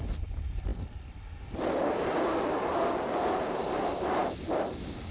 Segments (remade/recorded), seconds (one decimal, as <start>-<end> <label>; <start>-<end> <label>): 0.0-5.1 recorded